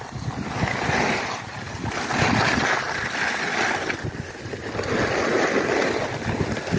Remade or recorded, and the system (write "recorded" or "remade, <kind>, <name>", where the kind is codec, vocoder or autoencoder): recorded